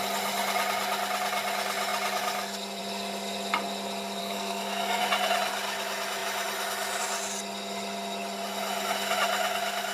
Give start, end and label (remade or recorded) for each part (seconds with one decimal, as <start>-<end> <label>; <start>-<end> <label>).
0.0-4.2 recorded; 4.2-5.0 remade; 5.0-9.9 recorded